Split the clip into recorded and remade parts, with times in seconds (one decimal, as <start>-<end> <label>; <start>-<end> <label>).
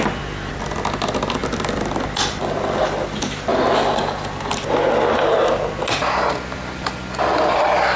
0.0-8.0 recorded